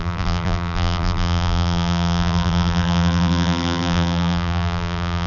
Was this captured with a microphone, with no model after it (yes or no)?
no